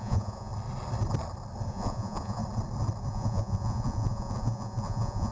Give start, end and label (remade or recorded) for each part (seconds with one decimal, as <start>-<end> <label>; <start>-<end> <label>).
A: 0.0-0.5 remade; 0.5-1.7 recorded; 1.7-2.4 remade; 2.4-3.1 recorded; 3.1-5.3 remade